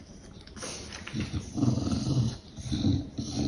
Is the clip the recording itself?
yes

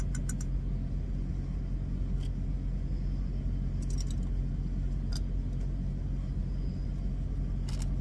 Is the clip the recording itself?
yes